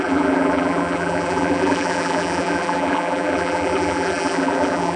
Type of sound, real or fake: fake